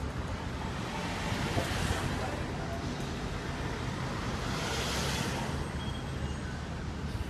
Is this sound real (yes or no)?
yes